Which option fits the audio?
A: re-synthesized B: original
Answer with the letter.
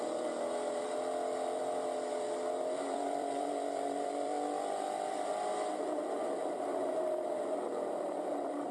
A